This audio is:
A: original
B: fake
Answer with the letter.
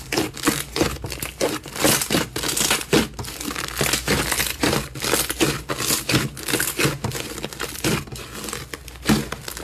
A